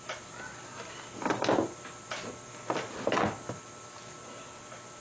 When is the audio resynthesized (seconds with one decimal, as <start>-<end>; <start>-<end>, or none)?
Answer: none